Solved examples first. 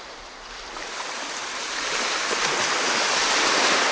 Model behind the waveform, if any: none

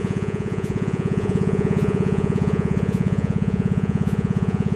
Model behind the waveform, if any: vocoder, Vocos